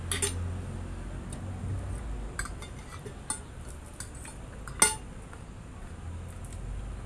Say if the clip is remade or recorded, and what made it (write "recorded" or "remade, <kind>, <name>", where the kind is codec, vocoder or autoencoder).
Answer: recorded